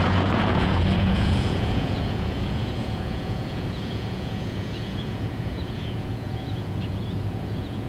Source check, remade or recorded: remade